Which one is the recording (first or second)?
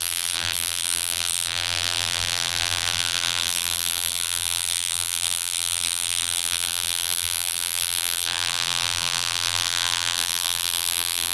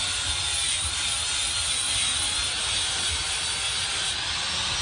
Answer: second